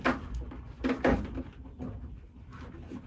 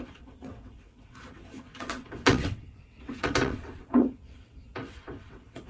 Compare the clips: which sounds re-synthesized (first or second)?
second